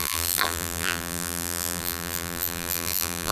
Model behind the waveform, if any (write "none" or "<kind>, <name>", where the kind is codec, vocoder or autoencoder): vocoder, BigVGAN v2